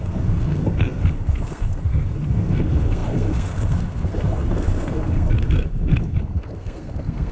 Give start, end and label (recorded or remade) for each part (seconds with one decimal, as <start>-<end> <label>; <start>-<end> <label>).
0.0-7.3 remade